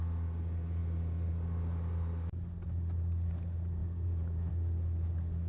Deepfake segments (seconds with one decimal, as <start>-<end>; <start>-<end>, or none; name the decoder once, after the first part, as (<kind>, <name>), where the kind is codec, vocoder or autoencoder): 3.8-4.5 (vocoder, Vocos)